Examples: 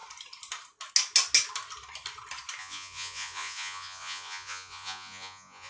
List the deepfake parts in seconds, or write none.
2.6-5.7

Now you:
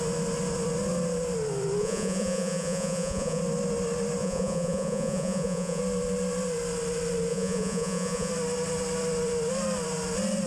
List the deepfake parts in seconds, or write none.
1.8-3.4; 4.2-5.8; 7.3-8.3

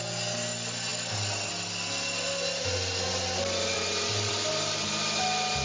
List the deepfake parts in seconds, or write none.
none

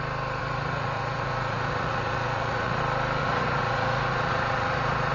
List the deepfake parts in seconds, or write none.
0.4-2.8; 3.2-5.1